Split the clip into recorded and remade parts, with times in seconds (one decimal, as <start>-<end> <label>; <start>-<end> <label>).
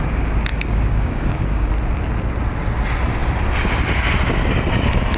0.0-0.5 recorded; 0.5-1.7 remade; 1.7-5.2 recorded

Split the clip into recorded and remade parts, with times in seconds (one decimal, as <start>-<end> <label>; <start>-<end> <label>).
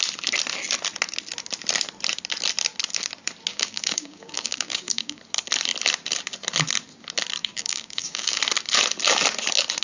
0.0-3.5 recorded; 3.5-5.2 remade; 5.2-7.4 recorded; 7.4-8.4 remade; 8.4-9.8 recorded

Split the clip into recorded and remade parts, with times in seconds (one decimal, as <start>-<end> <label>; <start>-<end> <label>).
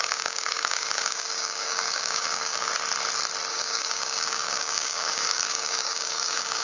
0.0-2.7 remade; 2.7-3.5 recorded; 3.5-6.6 remade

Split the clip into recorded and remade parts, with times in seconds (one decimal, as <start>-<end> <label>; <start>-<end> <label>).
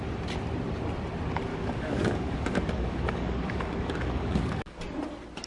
0.0-1.5 recorded; 1.5-4.8 remade; 4.8-5.5 recorded